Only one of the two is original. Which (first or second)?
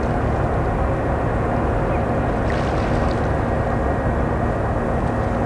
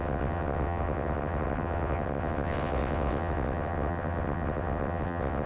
first